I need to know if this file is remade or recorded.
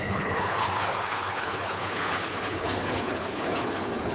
remade